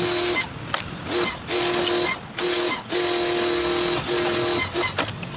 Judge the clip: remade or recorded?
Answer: recorded